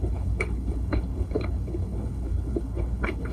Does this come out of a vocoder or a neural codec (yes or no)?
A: yes